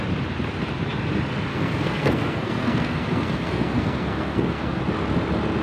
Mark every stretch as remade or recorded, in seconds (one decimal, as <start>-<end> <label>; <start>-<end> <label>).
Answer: 0.0-1.5 recorded; 1.5-4.8 remade; 4.8-5.6 recorded